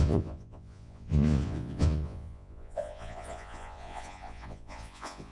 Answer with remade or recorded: remade